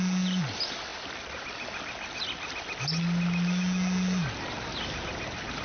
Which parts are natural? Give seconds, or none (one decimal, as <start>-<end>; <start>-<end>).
0.0-5.6